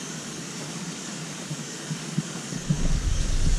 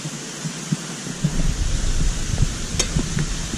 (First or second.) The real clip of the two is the second